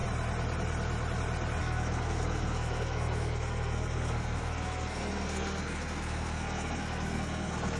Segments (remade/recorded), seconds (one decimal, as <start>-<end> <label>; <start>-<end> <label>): 0.0-1.6 recorded; 1.6-7.8 remade